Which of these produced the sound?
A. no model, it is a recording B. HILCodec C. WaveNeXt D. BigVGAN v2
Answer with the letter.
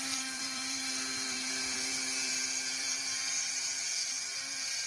D